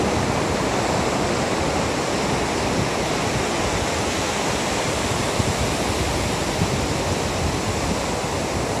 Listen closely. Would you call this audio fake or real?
real